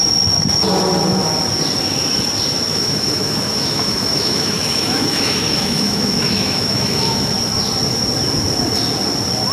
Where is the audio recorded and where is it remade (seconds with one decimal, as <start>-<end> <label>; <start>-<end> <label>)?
0.0-2.7 recorded; 2.7-7.3 remade; 7.3-9.5 recorded

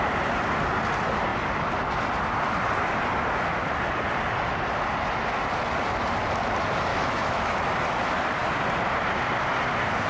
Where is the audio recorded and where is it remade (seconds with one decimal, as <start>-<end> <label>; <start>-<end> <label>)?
0.0-6.9 recorded; 6.9-7.5 remade; 7.5-10.1 recorded

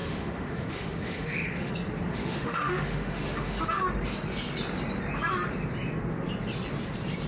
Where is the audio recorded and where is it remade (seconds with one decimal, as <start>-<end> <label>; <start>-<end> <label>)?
0.0-1.7 remade; 1.7-2.1 recorded; 2.1-3.6 remade; 3.6-7.3 recorded

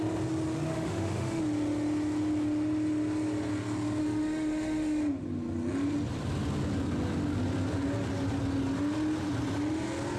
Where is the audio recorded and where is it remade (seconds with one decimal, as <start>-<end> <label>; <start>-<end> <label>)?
0.0-0.7 recorded; 0.7-1.4 remade; 1.4-4.0 recorded; 4.0-5.0 remade; 5.0-10.2 recorded

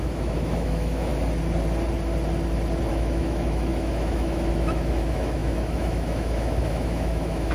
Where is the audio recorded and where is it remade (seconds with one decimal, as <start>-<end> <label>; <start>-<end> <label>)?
0.0-1.1 remade; 1.1-2.9 recorded; 2.9-7.5 remade

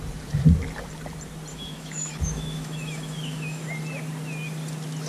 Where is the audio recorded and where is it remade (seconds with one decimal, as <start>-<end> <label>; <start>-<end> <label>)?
0.0-1.5 recorded; 1.5-3.6 remade; 3.6-5.1 recorded

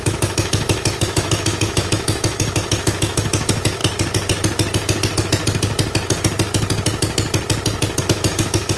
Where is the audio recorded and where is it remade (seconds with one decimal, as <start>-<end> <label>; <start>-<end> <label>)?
0.0-3.8 remade; 3.8-8.0 recorded; 8.0-8.8 remade

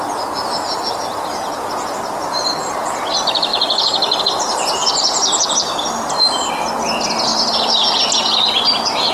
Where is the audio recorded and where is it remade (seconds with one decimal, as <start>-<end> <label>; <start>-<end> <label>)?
0.0-9.1 recorded